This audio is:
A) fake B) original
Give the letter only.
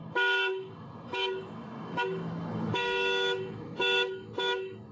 A